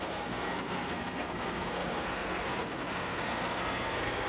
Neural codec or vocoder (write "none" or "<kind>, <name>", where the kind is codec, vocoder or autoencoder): codec, SNAC